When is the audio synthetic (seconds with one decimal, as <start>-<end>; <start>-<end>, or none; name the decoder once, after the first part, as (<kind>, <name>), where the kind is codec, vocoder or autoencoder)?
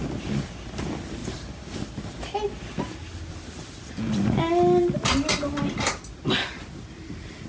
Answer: 1.2-1.9 (vocoder, BigVGAN v2)